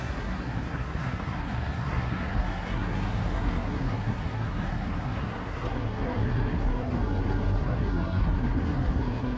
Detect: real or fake fake